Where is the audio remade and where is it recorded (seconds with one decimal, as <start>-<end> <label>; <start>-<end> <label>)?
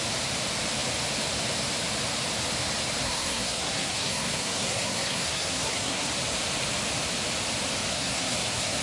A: 0.0-3.0 recorded; 3.0-6.1 remade; 6.1-7.9 recorded; 7.9-8.8 remade